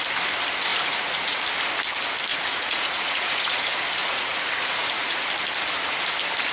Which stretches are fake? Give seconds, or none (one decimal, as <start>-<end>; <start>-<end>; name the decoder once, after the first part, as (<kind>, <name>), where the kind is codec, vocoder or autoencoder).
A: 0.7-1.4 (vocoder, Vocos); 2.3-3.6; 4.0-5.2

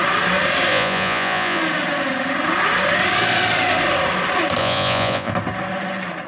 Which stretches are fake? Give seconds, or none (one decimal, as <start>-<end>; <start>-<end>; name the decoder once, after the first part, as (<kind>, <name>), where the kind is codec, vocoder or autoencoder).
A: 0.7-1.6 (vocoder, Vocos); 4.6-5.3

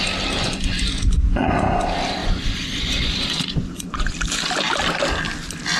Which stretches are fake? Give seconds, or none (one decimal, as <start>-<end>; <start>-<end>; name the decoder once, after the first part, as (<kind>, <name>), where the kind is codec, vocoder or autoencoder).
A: 0.4-1.7 (vocoder, Vocos); 2.2-4.1

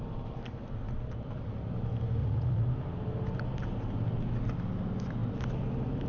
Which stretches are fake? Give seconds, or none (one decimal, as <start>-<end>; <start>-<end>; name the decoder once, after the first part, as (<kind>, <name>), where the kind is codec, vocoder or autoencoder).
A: 2.2-2.7 (vocoder, Vocos)